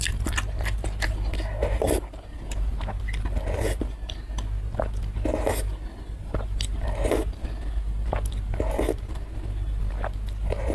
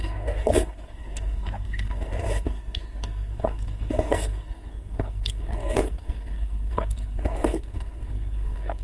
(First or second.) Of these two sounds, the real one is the first